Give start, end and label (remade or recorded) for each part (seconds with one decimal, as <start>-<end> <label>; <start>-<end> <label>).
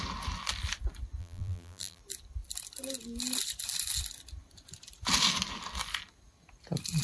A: 0.0-1.2 recorded; 1.2-2.0 remade; 2.0-7.0 recorded